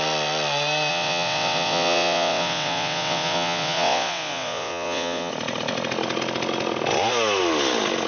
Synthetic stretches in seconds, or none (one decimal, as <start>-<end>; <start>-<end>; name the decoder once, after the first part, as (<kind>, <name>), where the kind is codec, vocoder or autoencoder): 0.9-5.3 (vocoder, WaveNeXt)